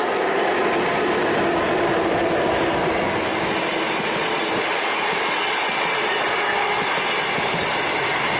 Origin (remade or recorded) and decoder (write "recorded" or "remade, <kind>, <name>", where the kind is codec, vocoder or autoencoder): recorded